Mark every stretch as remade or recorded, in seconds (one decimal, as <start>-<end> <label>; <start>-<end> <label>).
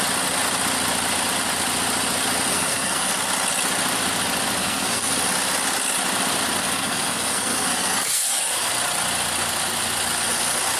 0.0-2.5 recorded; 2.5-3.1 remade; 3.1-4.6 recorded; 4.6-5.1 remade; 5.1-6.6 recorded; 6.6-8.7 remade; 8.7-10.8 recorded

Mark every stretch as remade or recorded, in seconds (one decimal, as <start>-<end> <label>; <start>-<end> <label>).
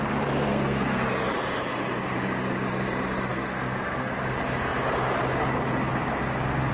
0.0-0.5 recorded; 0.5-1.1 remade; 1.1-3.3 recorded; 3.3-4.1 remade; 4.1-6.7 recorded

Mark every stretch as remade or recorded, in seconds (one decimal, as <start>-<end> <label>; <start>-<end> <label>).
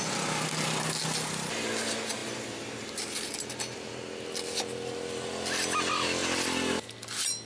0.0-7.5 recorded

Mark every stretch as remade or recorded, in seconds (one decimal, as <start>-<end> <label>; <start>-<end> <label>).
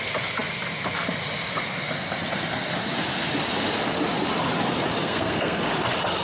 0.0-5.0 recorded; 5.0-5.6 remade; 5.6-6.2 recorded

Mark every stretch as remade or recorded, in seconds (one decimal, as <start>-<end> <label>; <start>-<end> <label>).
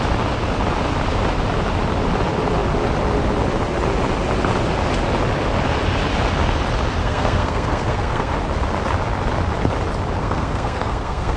0.0-7.0 recorded; 7.0-8.3 remade; 8.3-10.2 recorded; 10.2-11.4 remade